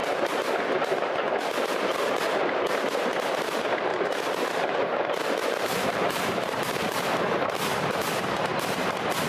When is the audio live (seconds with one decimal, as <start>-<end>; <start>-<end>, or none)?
0.0-3.9; 7.1-9.3